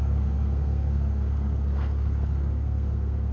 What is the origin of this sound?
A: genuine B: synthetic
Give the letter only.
B